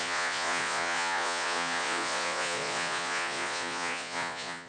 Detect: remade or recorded remade